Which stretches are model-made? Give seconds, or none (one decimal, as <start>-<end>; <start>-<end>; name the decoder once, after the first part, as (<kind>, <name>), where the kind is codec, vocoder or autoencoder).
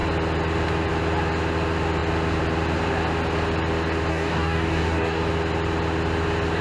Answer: 4.1-5.2 (codec, DAC)